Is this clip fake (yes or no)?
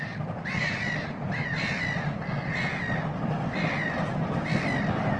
no